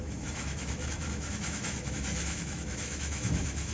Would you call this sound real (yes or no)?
no